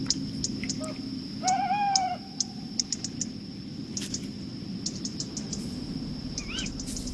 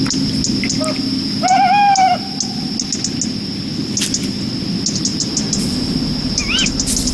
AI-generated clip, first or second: first